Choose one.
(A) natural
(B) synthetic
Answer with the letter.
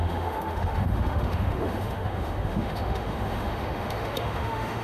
B